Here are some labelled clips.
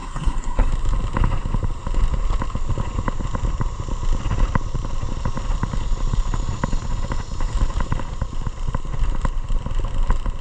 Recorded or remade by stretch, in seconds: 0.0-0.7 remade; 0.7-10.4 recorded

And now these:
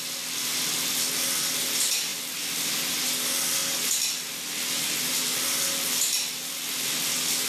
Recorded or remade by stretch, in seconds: 0.0-7.5 recorded

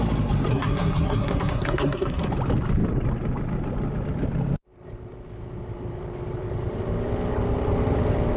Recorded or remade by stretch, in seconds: 0.0-0.5 recorded; 0.5-2.3 remade; 2.3-8.4 recorded

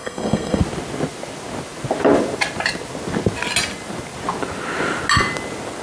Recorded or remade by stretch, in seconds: 0.0-0.6 remade; 0.6-5.8 recorded

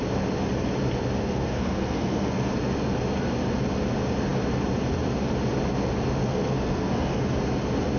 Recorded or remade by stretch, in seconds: 0.0-1.2 recorded; 1.2-2.5 remade; 2.5-6.2 recorded; 6.2-7.2 remade; 7.2-8.0 recorded